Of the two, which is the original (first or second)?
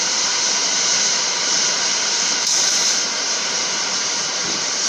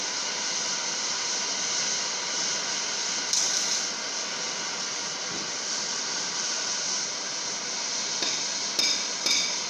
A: second